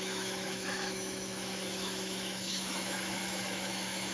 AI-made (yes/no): yes